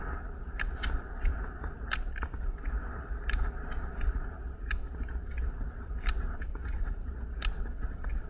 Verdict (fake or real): real